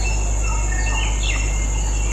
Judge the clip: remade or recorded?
recorded